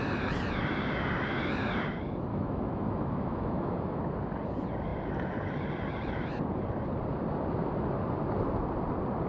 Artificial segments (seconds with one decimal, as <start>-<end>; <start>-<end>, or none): 2.3-4.0